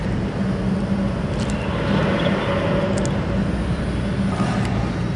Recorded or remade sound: recorded